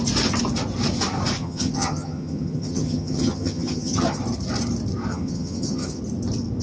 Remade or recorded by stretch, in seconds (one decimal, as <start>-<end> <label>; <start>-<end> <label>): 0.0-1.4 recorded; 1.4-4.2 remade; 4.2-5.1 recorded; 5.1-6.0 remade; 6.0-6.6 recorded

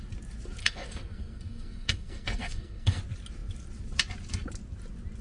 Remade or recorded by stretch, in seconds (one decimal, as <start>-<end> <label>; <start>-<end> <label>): 0.0-0.6 recorded; 0.6-3.0 remade; 3.0-5.2 recorded

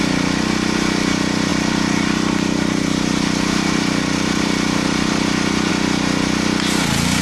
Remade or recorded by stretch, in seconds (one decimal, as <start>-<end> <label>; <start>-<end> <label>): 0.0-1.5 recorded; 1.5-5.7 remade; 5.7-7.2 recorded

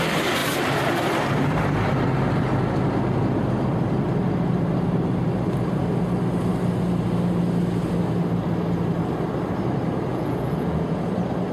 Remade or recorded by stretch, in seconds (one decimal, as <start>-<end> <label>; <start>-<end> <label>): 0.0-10.1 recorded; 10.1-11.0 remade; 11.0-11.5 recorded

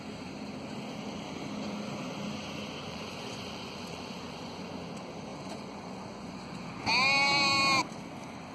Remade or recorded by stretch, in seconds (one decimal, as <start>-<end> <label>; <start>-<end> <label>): 0.0-2.9 recorded; 2.9-4.7 remade; 4.7-5.3 recorded; 5.3-6.7 remade; 6.7-8.5 recorded

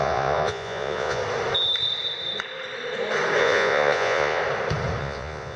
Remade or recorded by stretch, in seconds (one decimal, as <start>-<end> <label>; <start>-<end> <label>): 0.0-1.2 remade; 1.2-3.4 recorded; 3.4-4.4 remade; 4.4-5.0 recorded; 5.0-5.6 remade

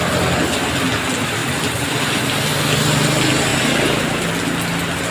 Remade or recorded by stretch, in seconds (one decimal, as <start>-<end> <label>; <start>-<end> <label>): 0.0-3.5 recorded; 3.5-4.3 remade; 4.3-5.1 recorded

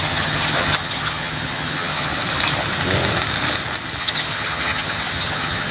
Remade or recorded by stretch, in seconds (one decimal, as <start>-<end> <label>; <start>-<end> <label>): 0.0-2.1 remade; 2.1-4.0 recorded; 4.0-5.7 remade